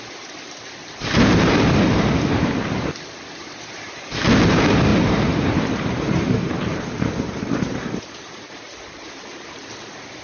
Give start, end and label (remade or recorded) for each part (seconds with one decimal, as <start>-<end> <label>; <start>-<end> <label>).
0.0-1.0 recorded; 1.0-2.5 remade; 2.5-4.9 recorded; 4.9-9.1 remade; 9.1-10.2 recorded